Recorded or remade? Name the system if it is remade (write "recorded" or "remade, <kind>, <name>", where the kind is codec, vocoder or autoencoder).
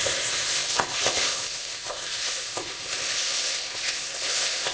remade, codec, ZipCodec